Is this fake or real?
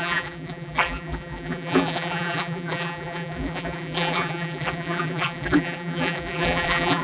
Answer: fake